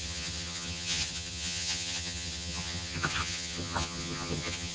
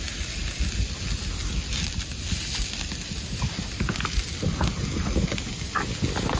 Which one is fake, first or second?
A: first